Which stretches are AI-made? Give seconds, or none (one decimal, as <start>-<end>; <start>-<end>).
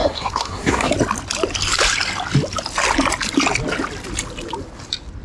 0.0-0.9